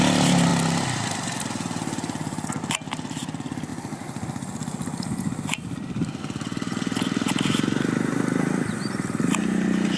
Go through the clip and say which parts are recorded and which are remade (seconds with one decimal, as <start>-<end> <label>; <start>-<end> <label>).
0.0-10.0 recorded